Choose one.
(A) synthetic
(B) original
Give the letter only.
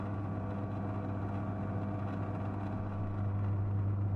B